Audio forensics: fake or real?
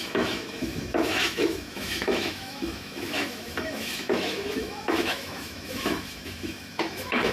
fake